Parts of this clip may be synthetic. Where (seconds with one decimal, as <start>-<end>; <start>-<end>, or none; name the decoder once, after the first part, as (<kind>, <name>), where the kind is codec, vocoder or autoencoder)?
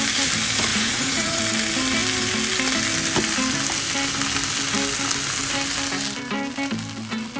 0.7-1.4 (vocoder, Vocos)